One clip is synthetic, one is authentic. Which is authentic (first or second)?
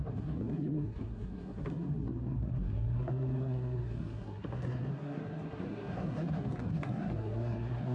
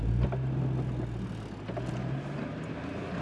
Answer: second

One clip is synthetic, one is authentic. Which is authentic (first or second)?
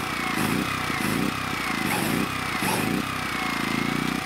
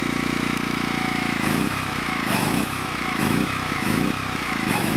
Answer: first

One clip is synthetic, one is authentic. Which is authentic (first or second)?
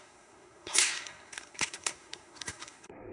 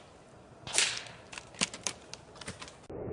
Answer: second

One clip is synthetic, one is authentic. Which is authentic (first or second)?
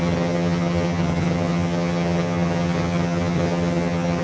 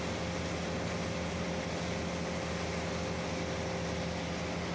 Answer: second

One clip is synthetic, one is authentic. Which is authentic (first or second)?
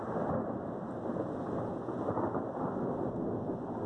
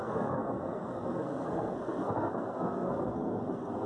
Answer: first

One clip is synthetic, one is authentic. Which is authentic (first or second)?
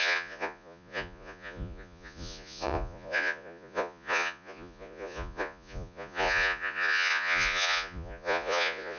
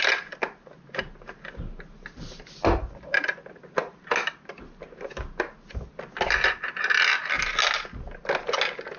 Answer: second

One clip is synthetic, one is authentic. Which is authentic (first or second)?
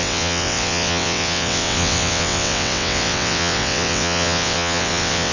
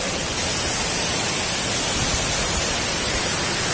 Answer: second